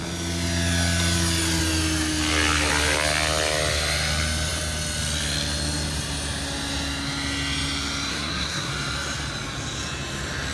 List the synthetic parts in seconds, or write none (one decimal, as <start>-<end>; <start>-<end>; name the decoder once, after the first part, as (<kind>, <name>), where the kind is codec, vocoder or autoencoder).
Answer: 8.1-8.7 (codec, SNAC)